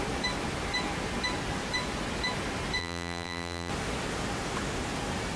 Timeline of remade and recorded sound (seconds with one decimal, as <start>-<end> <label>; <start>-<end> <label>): 0.0-2.8 recorded; 2.8-3.7 remade; 3.7-5.4 recorded